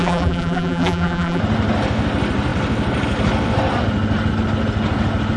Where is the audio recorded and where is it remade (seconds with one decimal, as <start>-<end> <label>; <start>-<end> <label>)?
0.0-1.4 remade; 1.4-5.4 recorded